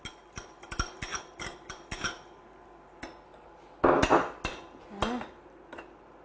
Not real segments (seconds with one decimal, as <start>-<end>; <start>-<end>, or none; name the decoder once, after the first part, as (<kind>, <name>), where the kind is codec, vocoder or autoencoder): none